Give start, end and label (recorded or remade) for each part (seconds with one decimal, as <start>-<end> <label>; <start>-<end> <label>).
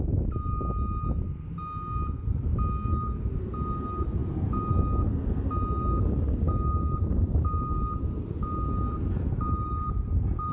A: 0.0-10.5 recorded